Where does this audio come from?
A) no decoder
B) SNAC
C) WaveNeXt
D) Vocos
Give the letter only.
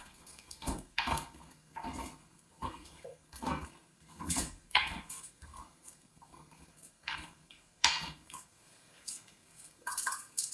B